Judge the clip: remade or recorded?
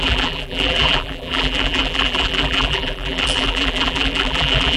remade